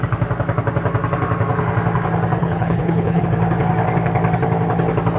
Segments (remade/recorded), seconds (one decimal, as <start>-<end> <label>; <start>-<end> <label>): 0.0-2.4 recorded; 2.4-3.2 remade; 3.2-5.2 recorded

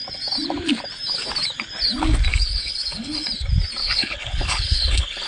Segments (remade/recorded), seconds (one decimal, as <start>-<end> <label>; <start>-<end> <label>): 0.0-2.3 recorded; 2.3-3.3 remade; 3.3-3.8 recorded; 3.8-5.3 remade

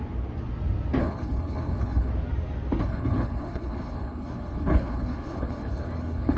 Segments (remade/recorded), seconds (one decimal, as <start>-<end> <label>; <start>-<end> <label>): 0.0-1.0 recorded; 1.0-2.1 remade; 2.1-2.8 recorded; 2.8-6.4 remade

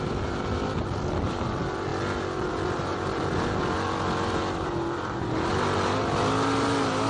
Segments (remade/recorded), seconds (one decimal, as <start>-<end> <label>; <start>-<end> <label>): 0.0-7.1 recorded

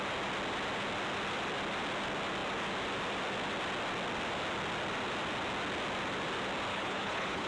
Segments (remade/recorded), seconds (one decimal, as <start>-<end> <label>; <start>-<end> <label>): 0.0-6.7 recorded; 6.7-7.5 remade

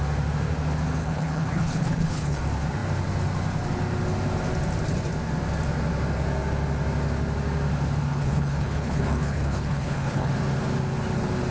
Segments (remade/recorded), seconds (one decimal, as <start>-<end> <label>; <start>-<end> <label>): 0.0-1.0 recorded; 1.0-2.4 remade; 2.4-8.1 recorded; 8.1-10.3 remade; 10.3-11.5 recorded